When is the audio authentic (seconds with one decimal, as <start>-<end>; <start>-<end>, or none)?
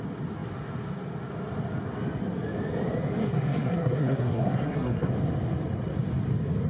0.0-3.2; 5.1-6.7